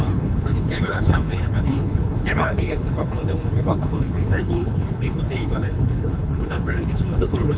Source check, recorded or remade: remade